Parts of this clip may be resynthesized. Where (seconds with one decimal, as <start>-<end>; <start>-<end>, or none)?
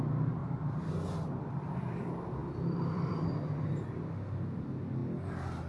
0.4-2.0; 2.4-3.5